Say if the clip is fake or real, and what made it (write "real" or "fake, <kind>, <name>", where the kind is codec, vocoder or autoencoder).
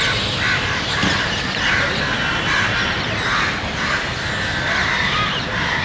real